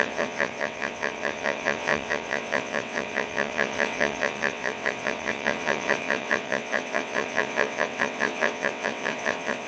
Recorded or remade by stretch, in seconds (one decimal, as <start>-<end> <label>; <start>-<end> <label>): 0.0-9.7 remade